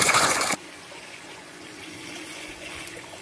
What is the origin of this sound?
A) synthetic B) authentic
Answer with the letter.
A